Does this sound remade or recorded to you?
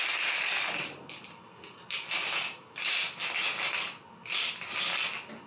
recorded